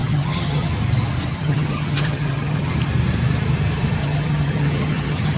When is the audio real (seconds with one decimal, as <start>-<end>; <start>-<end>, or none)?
0.7-1.3; 2.7-4.0